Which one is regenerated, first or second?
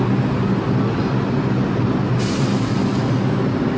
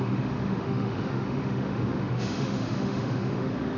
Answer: second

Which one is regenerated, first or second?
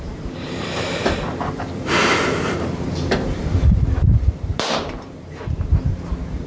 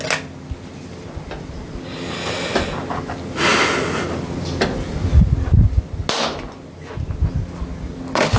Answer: first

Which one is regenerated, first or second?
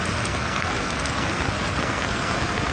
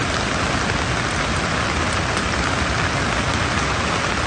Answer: first